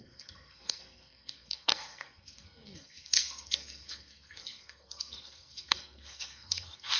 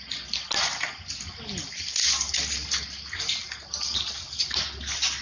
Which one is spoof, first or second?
first